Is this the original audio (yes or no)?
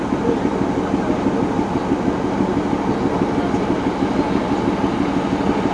yes